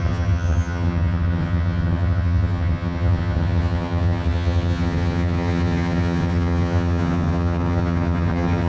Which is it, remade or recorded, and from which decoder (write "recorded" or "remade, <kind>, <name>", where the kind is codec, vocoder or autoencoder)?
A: remade, vocoder, HiFi-GAN